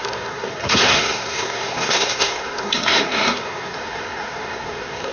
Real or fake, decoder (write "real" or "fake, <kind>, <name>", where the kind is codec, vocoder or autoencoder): fake, codec, SNAC